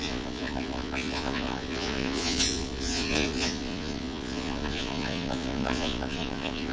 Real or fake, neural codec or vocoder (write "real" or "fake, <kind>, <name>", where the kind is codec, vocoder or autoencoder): fake, vocoder, Vocos